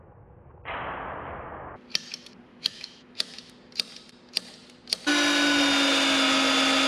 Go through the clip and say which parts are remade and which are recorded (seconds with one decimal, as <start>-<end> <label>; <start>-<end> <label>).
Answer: 0.0-2.5 recorded; 2.5-3.5 remade; 3.5-6.9 recorded

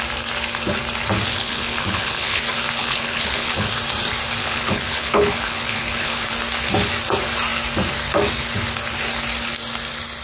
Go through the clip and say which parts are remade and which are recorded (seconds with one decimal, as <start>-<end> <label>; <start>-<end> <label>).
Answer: 0.0-1.3 recorded; 1.3-2.4 remade; 2.4-2.8 recorded; 2.8-3.7 remade; 3.7-4.4 recorded; 4.4-6.3 remade; 6.3-10.2 recorded